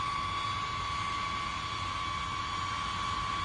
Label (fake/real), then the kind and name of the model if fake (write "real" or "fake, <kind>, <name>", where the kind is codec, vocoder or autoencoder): real